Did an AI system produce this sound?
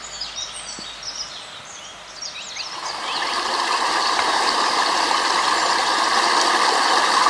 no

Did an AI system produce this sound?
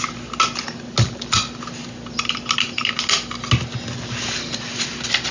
no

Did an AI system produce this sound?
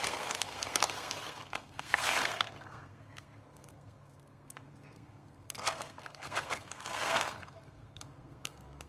yes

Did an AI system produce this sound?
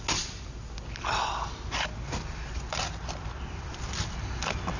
no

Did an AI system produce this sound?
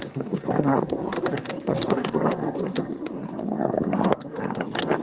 yes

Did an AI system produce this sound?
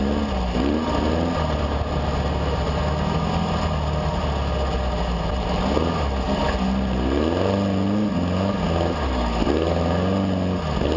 no